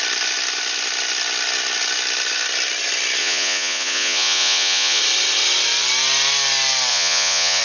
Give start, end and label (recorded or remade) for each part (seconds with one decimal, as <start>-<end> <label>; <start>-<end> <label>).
0.0-3.2 recorded; 3.2-5.0 remade; 5.0-6.9 recorded; 6.9-7.6 remade